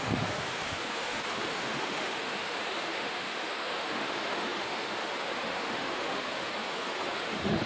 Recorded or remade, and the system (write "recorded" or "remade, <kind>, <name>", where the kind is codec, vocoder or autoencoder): remade, autoencoder, DAC-VAE